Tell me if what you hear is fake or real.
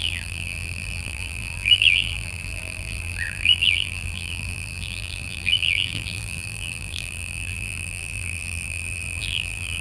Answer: fake